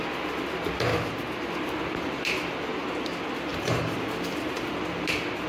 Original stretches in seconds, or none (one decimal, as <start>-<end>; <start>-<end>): 0.0-0.9; 1.5-3.5; 4.6-5.5